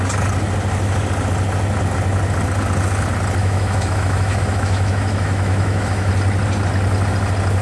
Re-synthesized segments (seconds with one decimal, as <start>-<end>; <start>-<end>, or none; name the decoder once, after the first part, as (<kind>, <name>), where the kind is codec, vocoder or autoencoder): 3.4-6.1 (autoencoder, DAC-VAE)